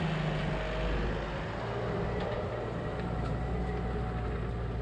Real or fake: real